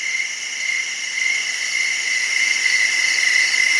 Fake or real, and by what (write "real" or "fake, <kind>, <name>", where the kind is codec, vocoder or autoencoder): real